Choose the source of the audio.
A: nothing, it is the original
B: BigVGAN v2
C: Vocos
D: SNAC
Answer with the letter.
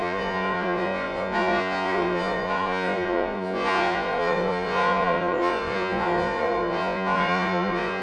C